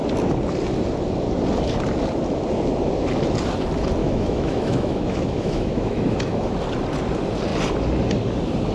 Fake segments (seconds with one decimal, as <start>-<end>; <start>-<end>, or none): 4.0-6.5